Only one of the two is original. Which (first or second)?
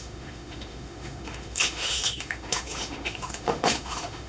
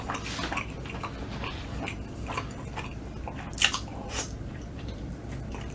second